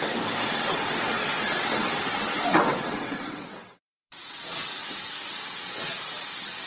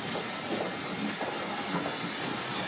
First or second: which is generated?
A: first